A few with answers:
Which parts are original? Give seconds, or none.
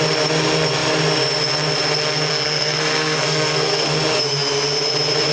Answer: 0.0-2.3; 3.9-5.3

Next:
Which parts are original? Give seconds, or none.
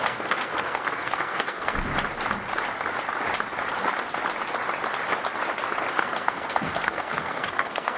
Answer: 1.9-5.9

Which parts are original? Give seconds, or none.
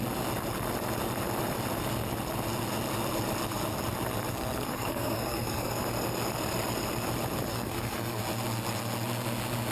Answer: 0.0-4.3; 5.8-7.5; 8.2-9.7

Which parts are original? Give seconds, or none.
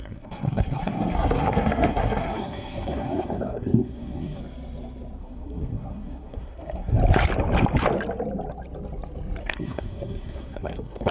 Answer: 4.4-5.2; 7.0-9.4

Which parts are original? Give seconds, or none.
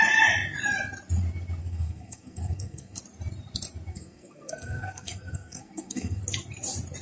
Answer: 0.0-1.6; 3.0-3.9; 6.2-7.0